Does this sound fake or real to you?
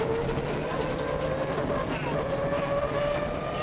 real